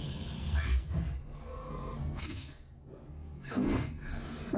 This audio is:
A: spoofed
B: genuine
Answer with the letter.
A